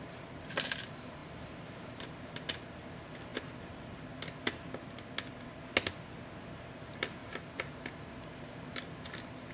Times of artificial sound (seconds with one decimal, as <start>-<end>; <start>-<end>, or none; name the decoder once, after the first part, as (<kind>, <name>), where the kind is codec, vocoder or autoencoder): 0.0-3.3 (vocoder, BigVGAN v2); 6.7-9.5